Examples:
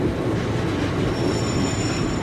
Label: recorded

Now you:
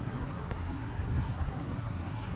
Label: remade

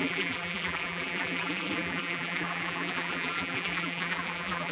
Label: remade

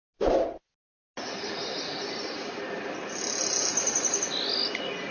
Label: recorded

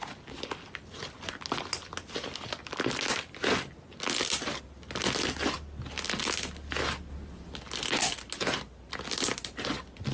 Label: recorded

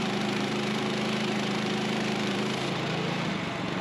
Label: remade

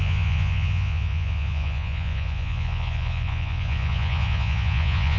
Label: remade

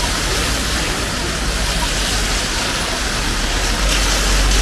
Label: recorded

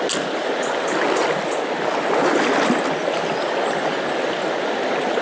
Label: recorded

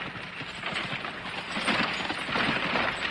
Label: recorded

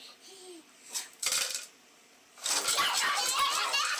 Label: recorded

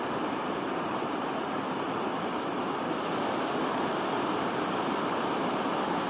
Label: recorded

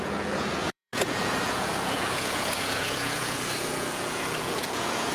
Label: remade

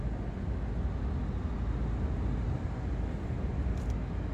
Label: recorded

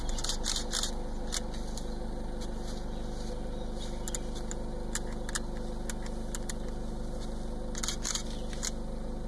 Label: recorded